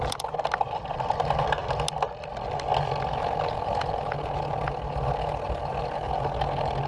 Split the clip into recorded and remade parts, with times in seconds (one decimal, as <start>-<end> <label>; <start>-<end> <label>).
0.0-6.9 recorded